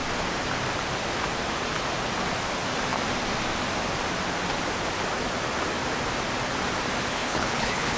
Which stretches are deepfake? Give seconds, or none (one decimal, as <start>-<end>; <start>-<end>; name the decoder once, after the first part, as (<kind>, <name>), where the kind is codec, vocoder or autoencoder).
7.1-8.0 (codec, HILCodec)